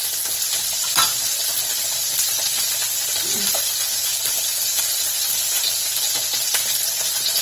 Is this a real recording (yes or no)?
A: yes